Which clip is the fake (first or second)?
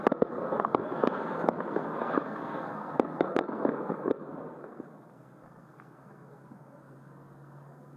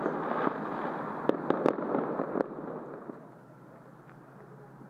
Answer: first